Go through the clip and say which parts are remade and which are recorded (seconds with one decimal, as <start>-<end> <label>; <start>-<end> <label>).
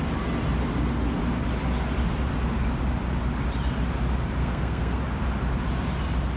0.0-4.4 recorded; 4.4-5.0 remade; 5.0-6.4 recorded